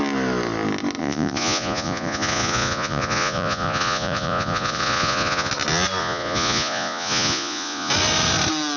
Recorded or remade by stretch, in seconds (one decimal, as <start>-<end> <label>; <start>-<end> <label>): 0.0-1.0 recorded; 1.0-5.5 remade; 5.5-6.0 recorded; 6.0-7.9 remade; 7.9-8.8 recorded